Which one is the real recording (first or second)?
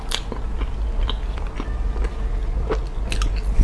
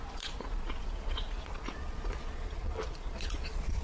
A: first